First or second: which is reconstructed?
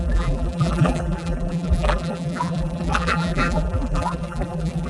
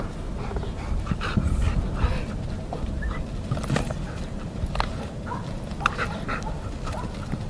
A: first